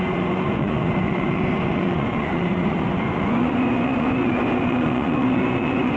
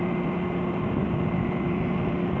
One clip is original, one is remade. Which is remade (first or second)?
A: first